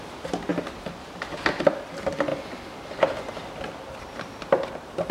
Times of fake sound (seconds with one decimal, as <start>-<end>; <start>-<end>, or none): none